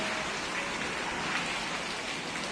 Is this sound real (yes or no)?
yes